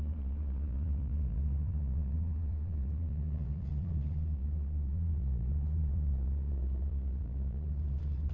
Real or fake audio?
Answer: fake